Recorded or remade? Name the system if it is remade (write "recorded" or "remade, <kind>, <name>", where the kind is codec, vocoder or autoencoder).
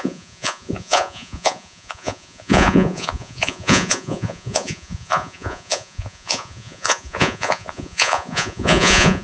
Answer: remade, vocoder, Vocos